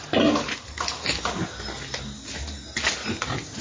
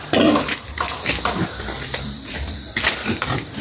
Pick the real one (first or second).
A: first